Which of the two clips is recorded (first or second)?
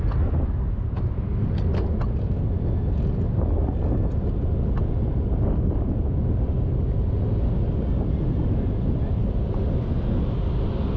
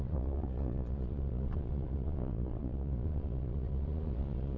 first